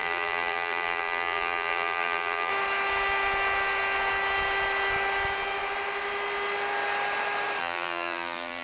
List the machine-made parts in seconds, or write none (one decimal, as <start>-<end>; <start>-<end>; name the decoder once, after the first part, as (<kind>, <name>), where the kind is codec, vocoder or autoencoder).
0.0-2.5 (vocoder, BigVGAN v2); 7.6-8.6